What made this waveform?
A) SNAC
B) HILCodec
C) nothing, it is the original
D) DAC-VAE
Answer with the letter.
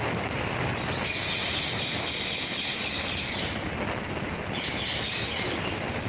C